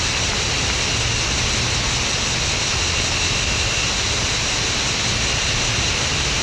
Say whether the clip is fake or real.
real